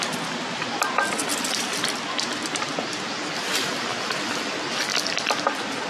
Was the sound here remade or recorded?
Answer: recorded